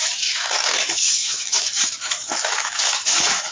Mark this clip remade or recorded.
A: remade